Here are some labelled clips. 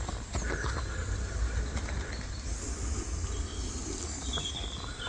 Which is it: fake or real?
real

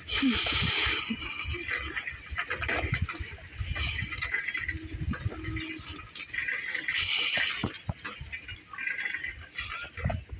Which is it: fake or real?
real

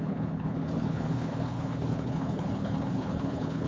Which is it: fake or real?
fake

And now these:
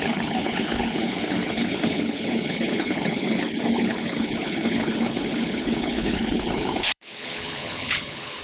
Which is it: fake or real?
fake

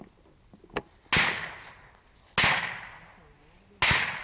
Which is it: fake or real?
real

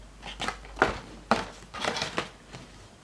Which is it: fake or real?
real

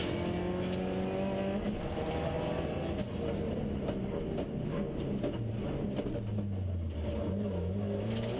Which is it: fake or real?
real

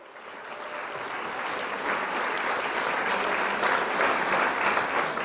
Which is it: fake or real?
real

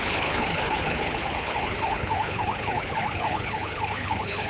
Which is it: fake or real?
fake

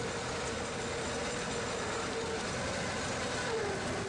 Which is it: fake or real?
real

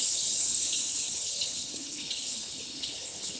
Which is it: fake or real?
fake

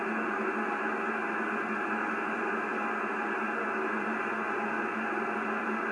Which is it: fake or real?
real